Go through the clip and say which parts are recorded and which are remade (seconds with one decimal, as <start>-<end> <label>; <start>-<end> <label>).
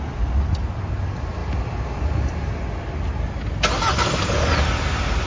0.0-5.3 recorded